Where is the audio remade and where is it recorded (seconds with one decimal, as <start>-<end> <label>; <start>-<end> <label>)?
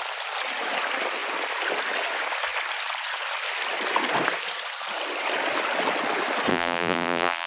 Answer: 0.0-6.5 recorded; 6.5-7.5 remade